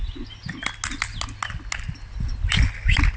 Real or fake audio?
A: real